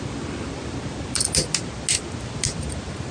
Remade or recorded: recorded